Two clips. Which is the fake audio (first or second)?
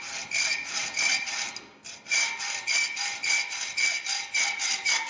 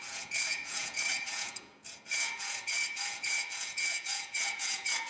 second